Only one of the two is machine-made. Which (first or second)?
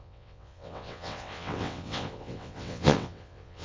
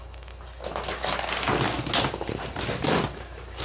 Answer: first